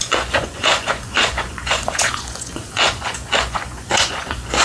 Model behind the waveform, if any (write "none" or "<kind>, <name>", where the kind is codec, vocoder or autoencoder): vocoder, Vocos